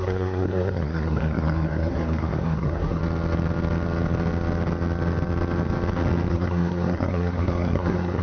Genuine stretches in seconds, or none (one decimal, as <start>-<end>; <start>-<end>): 3.0-6.3

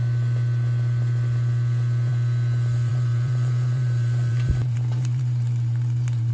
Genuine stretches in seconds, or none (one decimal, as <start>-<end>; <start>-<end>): 0.0-2.9